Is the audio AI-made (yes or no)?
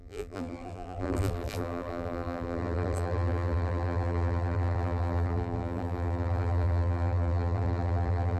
yes